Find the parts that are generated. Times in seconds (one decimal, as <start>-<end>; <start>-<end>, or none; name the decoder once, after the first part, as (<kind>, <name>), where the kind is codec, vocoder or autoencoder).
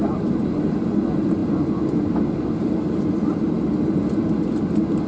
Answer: none